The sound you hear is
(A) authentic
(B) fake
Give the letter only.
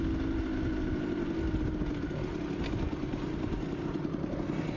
A